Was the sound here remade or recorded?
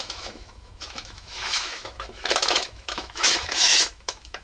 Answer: remade